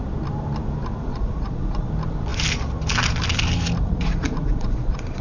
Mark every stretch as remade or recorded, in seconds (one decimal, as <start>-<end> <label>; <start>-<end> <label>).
0.0-1.1 recorded; 1.1-1.9 remade; 1.9-3.8 recorded; 3.8-5.2 remade